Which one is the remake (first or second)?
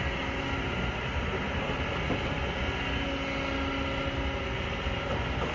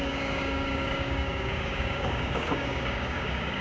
second